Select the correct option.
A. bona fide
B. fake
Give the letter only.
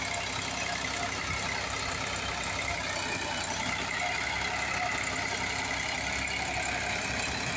B